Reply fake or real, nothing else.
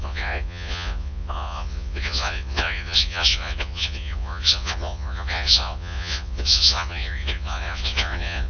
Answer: fake